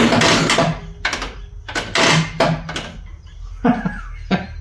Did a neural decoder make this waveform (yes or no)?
no